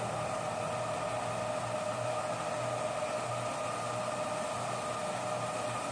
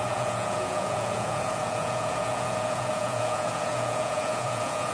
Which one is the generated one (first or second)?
second